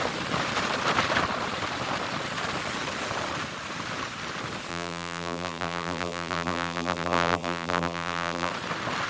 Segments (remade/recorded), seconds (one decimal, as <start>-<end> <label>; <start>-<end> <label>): 0.0-4.7 recorded; 4.7-8.5 remade; 8.5-9.1 recorded